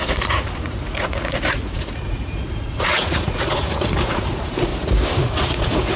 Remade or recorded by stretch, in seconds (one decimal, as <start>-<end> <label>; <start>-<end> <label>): 0.0-4.7 remade; 4.7-5.2 recorded; 5.2-6.0 remade